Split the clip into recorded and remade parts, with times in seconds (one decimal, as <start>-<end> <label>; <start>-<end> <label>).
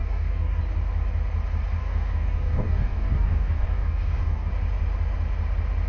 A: 0.0-0.6 remade; 0.6-1.8 recorded; 1.8-4.5 remade; 4.5-5.9 recorded